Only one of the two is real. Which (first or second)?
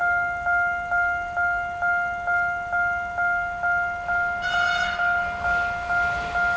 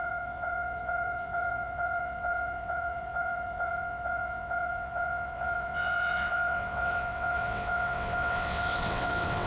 first